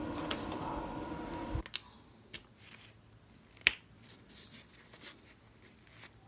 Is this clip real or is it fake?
real